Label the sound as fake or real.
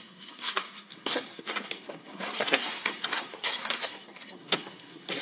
fake